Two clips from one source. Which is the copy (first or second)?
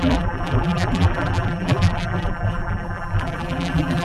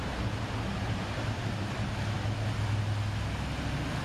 first